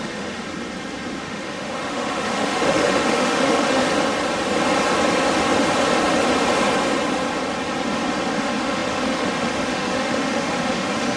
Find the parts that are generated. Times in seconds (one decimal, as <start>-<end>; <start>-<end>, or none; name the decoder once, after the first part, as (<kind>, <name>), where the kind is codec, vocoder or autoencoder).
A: 0.0-0.4 (autoencoder, DAC-VAE); 1.2-3.9; 8.4-11.2